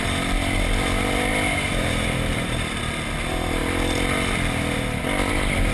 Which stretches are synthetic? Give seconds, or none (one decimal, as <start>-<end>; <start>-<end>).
1.3-2.8